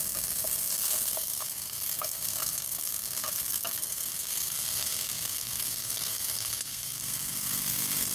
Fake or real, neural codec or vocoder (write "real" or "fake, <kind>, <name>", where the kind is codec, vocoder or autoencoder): fake, codec, SNAC